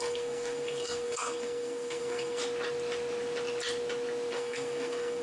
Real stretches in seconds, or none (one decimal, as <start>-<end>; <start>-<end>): 2.4-4.3